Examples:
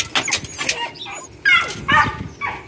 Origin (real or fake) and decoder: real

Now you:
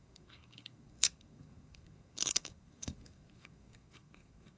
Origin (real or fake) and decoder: fake, codec, SNAC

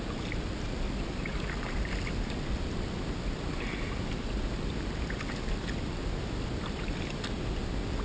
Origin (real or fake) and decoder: real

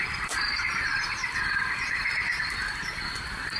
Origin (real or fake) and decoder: fake, vocoder, BigVGAN v2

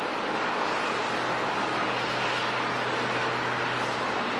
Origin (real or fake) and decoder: real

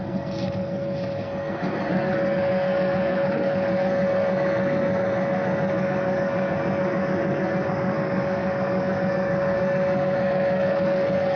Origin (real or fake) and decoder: fake, codec, SNAC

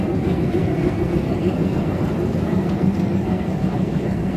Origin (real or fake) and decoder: fake, codec, SNAC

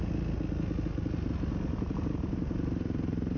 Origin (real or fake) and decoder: real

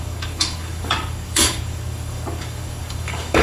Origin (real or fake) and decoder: fake, codec, DAC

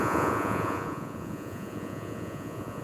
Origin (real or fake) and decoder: fake, vocoder, Vocos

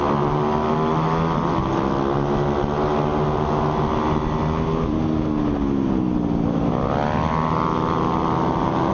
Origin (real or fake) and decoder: real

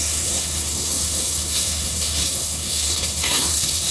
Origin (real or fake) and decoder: fake, codec, SNAC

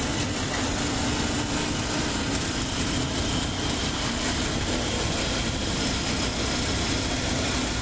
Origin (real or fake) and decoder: real